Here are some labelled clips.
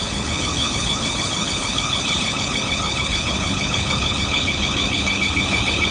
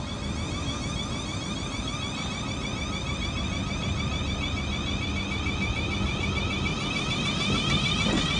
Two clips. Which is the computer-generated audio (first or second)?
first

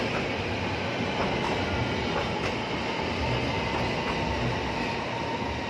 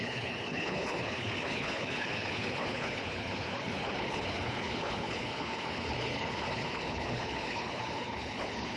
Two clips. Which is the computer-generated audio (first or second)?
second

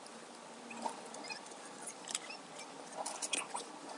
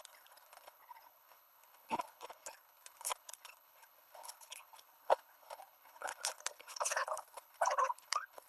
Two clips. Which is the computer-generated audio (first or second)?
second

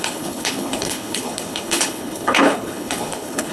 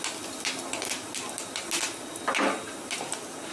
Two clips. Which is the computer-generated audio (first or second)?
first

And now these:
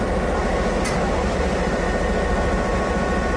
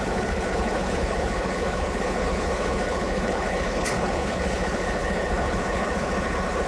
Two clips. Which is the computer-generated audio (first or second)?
second